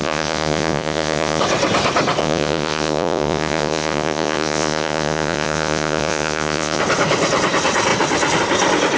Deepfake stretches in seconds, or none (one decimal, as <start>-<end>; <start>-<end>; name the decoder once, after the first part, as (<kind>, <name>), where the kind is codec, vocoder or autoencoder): 0.0-1.4 (vocoder, Vocos); 2.2-6.8